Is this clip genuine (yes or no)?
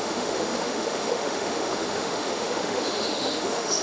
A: no